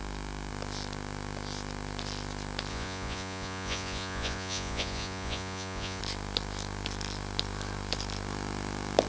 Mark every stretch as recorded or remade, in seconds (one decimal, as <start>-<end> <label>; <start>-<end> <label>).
0.0-2.7 recorded; 2.7-6.0 remade; 6.0-9.1 recorded